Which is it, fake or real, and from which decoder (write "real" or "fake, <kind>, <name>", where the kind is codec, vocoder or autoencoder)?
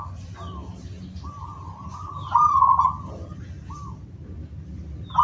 real